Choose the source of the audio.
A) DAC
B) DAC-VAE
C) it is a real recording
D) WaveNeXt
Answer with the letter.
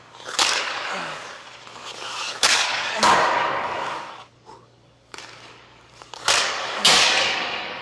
A